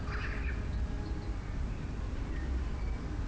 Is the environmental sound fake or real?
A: real